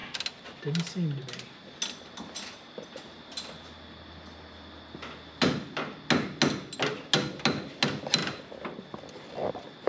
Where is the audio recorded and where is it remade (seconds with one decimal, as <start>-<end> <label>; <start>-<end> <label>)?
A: 0.0-9.9 recorded

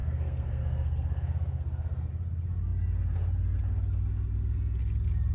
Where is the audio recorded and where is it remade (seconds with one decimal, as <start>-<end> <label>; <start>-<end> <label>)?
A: 0.0-2.1 remade; 2.1-5.3 recorded

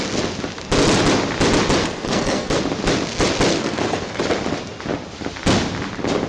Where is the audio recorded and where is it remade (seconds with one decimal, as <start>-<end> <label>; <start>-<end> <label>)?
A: 0.0-1.8 recorded; 1.8-2.6 remade; 2.6-3.5 recorded; 3.5-4.2 remade; 4.2-6.3 recorded

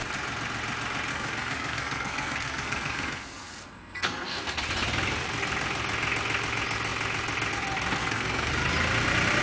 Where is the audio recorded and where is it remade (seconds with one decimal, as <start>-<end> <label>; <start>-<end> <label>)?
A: 0.0-1.1 recorded; 1.1-4.6 remade; 4.6-8.0 recorded; 8.0-8.5 remade; 8.5-9.4 recorded

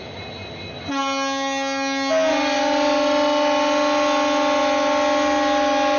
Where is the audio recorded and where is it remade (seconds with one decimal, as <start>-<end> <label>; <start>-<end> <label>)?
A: 0.0-6.0 recorded

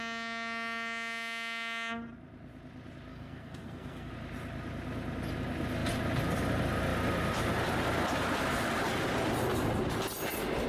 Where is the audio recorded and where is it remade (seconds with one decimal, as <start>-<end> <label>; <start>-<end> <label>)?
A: 0.0-3.1 recorded; 3.1-4.1 remade; 4.1-10.7 recorded

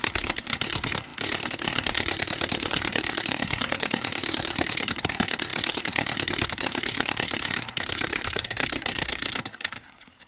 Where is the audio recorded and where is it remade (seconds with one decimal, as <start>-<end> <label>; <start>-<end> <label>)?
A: 0.0-10.3 remade